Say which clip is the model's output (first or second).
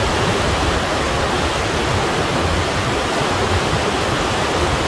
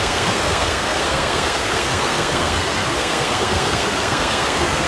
second